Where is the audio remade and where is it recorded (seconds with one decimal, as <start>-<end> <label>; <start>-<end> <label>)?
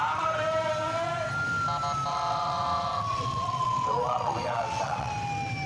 0.0-2.1 recorded; 2.1-5.1 remade; 5.1-5.7 recorded